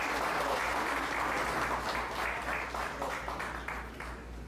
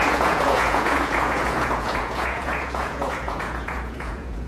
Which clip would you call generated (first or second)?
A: second